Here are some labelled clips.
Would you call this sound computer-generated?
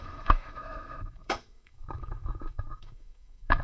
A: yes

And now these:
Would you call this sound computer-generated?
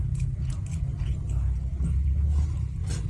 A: no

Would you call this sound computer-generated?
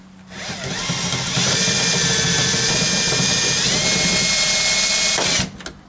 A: no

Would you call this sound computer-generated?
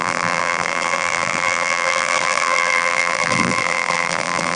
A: yes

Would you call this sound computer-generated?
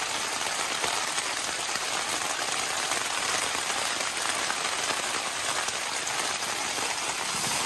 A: no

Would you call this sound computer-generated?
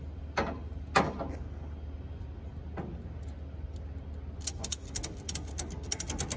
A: no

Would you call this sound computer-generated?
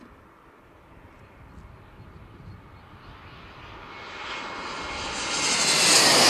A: no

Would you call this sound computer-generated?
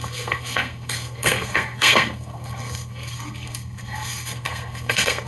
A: yes